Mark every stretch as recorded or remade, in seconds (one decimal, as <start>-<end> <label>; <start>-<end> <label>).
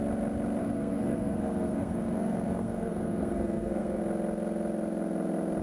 0.0-0.6 recorded; 0.6-4.0 remade; 4.0-5.6 recorded